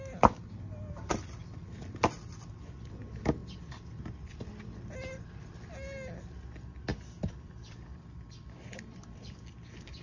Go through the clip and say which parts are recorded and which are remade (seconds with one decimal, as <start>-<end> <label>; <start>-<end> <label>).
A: 0.0-6.9 recorded; 6.9-9.3 remade; 9.3-10.0 recorded